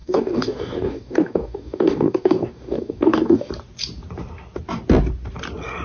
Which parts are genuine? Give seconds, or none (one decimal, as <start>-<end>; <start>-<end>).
3.5-5.8